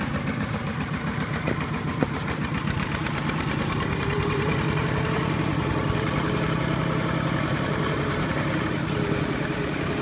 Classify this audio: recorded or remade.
remade